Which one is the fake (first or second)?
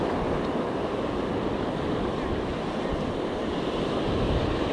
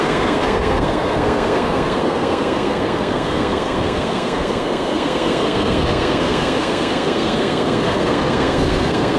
second